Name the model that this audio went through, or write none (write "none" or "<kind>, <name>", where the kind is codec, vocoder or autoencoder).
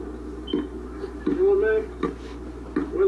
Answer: none